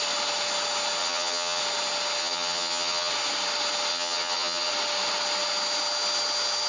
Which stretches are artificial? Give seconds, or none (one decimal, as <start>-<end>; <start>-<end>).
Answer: 1.0-1.6; 2.2-3.1; 3.9-4.7